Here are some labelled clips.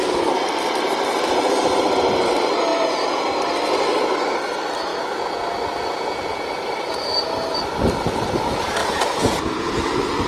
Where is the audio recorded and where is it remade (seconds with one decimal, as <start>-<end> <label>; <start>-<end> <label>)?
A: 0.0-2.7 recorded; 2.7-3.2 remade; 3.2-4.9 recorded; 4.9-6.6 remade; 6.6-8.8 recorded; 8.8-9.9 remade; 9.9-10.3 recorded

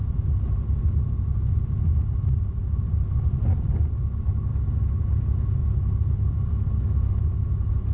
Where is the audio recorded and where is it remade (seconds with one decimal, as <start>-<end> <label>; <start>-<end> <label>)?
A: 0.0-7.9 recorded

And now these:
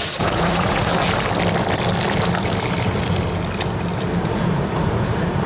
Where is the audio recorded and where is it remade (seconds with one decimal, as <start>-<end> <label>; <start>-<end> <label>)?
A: 0.0-0.9 remade; 0.9-4.2 recorded; 4.2-5.5 remade

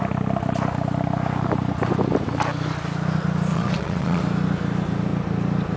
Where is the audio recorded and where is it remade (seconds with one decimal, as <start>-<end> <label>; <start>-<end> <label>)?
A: 0.0-3.5 recorded; 3.5-4.2 remade; 4.2-5.8 recorded

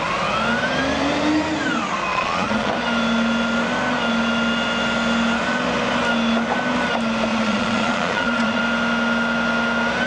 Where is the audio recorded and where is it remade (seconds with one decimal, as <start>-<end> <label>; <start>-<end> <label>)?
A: 0.0-2.1 recorded; 2.1-2.7 remade; 2.7-7.3 recorded; 7.3-8.6 remade; 8.6-10.1 recorded